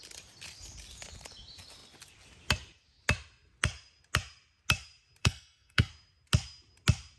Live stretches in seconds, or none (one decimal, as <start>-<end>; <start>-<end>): 0.0-5.2; 5.9-7.2